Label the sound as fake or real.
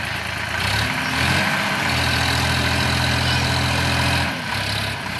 real